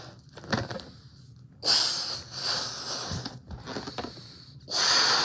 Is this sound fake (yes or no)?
no